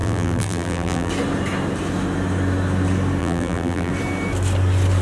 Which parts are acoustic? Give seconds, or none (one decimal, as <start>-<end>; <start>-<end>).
1.1-3.2; 3.9-5.0